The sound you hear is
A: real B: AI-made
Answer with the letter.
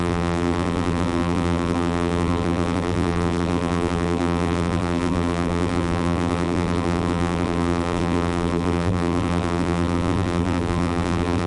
B